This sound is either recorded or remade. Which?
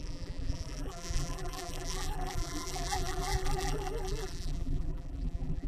remade